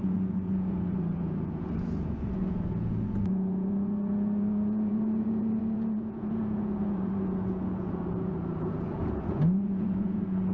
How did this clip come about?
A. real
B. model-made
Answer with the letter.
B